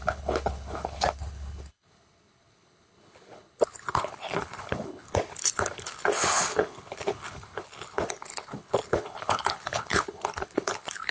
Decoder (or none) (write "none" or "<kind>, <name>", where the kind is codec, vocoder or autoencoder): codec, HILCodec